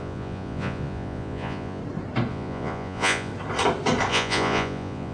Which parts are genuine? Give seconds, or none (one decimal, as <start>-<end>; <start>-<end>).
1.8-2.3; 3.3-4.1